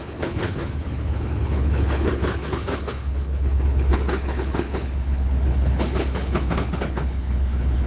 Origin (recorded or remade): remade